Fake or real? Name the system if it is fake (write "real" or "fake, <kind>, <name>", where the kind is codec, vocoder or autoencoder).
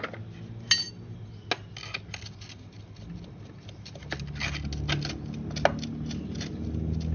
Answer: real